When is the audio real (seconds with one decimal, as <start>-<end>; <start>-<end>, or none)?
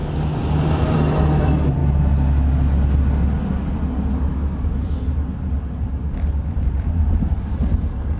0.0-0.6; 1.8-4.8